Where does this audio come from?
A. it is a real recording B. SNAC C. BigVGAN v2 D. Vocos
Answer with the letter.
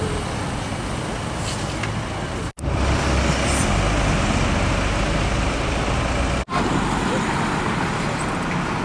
A